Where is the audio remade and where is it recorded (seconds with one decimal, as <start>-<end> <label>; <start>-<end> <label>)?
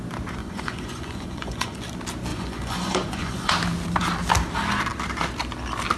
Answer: 0.0-0.4 recorded; 0.4-1.8 remade; 1.8-2.3 recorded; 2.3-3.5 remade; 3.5-6.0 recorded